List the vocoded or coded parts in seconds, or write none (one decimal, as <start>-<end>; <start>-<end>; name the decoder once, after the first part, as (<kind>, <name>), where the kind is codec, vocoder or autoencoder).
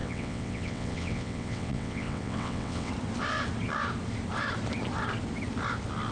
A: 0.0-2.9 (vocoder, WaveNeXt)